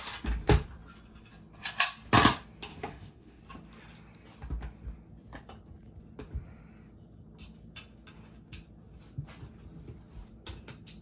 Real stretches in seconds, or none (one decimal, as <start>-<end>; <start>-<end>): 0.0-2.7; 3.4-11.0